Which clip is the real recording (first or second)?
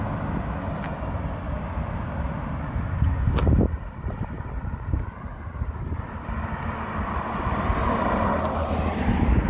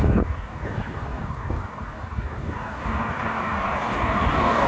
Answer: first